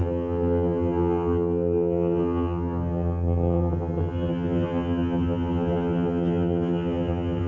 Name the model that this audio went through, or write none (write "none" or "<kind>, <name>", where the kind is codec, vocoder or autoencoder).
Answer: vocoder, HiFi-GAN